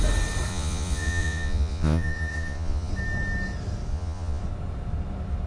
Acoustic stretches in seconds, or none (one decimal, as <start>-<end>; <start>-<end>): 0.0-0.5; 2.9-3.9; 4.4-5.5